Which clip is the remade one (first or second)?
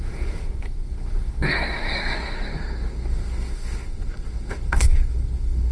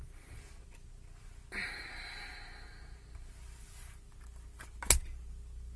first